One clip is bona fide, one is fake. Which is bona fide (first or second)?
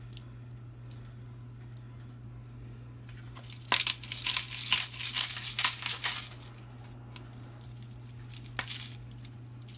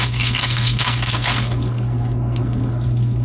first